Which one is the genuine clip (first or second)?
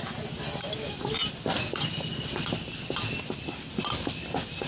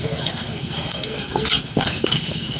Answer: first